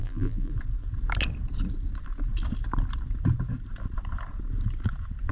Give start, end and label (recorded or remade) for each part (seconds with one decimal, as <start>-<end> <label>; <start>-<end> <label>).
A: 0.0-0.5 remade; 0.5-5.3 recorded